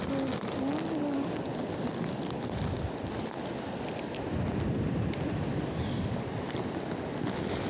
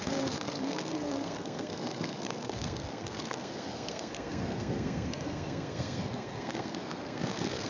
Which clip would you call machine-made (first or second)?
second